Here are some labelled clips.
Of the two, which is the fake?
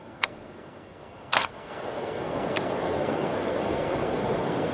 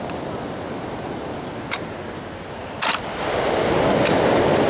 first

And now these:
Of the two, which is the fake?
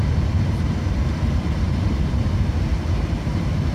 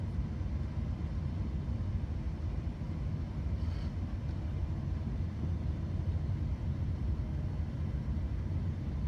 first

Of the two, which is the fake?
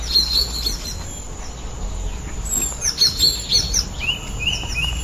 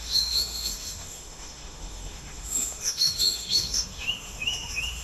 second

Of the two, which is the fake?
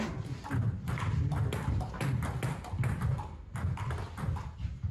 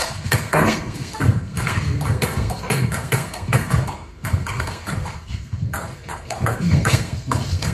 second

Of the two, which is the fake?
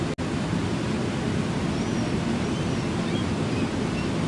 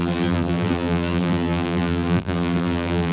second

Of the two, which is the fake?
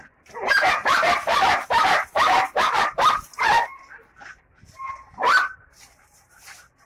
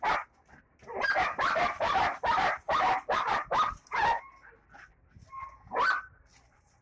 first